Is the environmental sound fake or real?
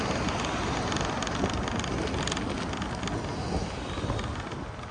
real